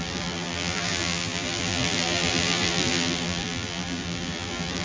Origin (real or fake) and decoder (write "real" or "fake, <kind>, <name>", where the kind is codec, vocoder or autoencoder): fake, vocoder, BigVGAN v2